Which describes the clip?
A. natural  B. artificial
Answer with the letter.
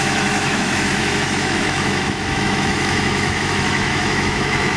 B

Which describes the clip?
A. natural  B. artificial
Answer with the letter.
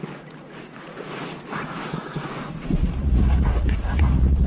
B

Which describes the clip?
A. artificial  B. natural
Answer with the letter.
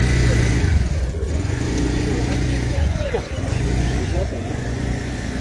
A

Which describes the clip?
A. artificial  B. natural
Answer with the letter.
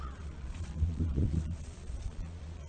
A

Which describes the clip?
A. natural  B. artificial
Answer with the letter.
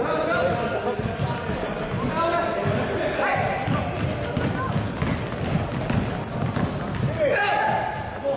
A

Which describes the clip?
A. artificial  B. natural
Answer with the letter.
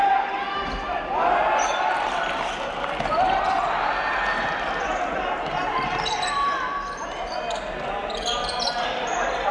B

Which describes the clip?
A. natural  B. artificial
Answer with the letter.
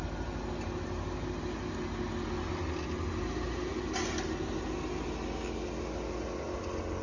A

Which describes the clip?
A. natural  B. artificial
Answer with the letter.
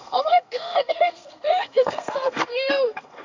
B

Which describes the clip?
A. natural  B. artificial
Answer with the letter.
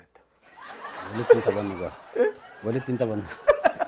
A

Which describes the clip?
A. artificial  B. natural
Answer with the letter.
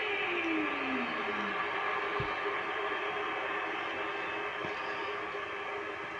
B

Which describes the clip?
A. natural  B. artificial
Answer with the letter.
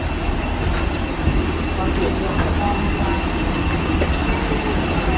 A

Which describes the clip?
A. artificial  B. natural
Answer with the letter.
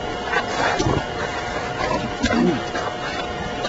B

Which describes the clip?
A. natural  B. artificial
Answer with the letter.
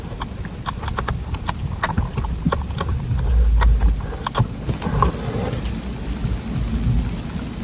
A